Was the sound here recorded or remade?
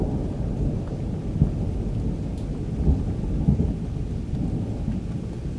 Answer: recorded